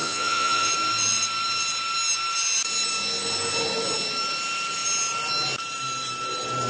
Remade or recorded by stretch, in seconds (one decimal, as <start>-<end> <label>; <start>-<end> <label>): 0.0-0.7 remade; 0.7-6.7 recorded